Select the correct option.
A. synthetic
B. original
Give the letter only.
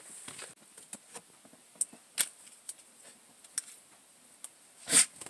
B